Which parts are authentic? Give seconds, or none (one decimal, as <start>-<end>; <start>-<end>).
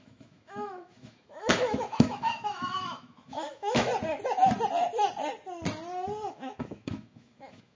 3.9-6.3